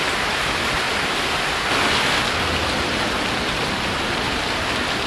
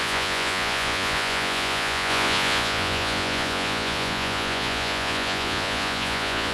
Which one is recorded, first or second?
first